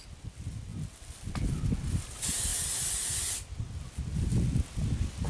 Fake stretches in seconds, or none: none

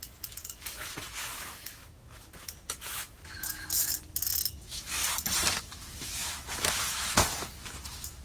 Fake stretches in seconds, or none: 0.0-5.0; 5.6-8.2

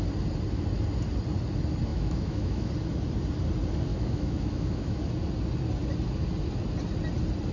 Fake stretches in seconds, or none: 1.9-2.7; 3.9-5.1

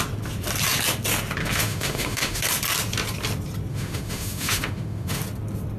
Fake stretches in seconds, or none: 1.4-2.4; 3.7-5.2

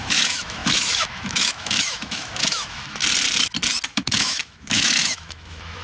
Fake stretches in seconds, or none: 0.0-3.0; 3.9-5.8

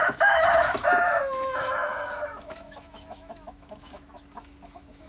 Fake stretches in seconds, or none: 0.0-5.1

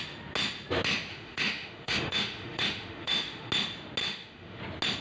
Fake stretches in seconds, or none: 1.1-3.5; 4.0-4.6

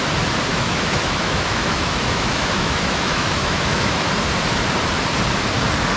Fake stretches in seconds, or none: 0.5-4.1